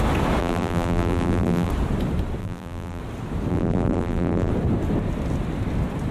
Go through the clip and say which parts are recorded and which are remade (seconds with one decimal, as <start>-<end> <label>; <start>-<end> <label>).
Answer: 0.0-0.4 recorded; 0.4-1.7 remade; 1.7-2.4 recorded; 2.4-3.0 remade; 3.0-3.5 recorded; 3.5-4.5 remade; 4.5-6.1 recorded